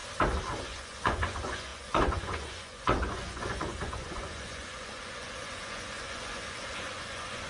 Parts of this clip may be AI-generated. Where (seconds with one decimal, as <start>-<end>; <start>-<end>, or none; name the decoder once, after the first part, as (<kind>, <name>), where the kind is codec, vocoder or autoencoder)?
0.6-7.5 (vocoder, Vocos)